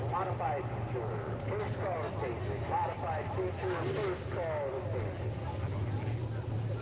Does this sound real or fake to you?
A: real